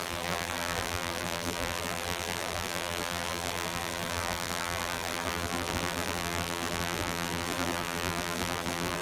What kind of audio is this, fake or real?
fake